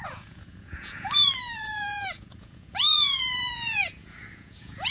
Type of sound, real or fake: fake